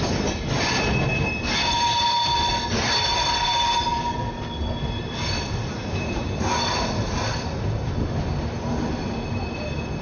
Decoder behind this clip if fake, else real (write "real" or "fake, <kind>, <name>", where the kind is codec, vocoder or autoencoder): real